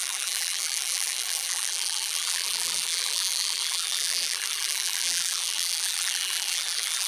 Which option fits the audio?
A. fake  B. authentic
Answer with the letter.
A